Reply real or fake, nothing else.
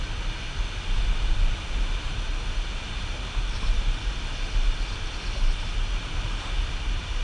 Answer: real